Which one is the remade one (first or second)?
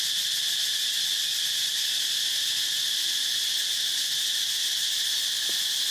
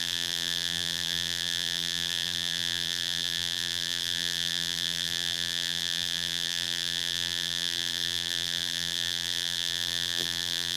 second